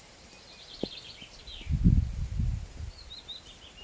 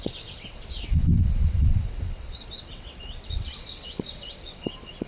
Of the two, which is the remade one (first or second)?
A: second